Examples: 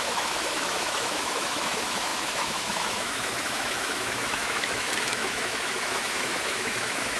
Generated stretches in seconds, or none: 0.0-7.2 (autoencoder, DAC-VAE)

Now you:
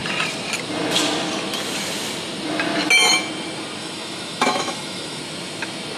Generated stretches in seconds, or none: 3.8-5.2 (autoencoder, DAC-VAE)

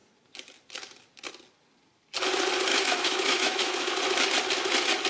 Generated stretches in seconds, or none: 2.7-3.9 (autoencoder, DAC-VAE)